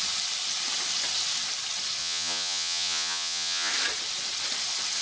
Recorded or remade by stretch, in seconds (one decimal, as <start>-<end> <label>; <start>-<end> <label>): 0.0-2.0 recorded; 2.0-3.7 remade; 3.7-5.0 recorded